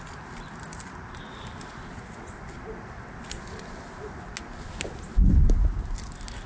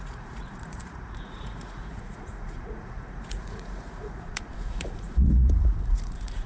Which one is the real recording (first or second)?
first